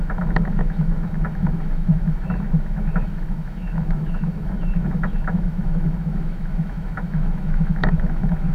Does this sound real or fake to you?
fake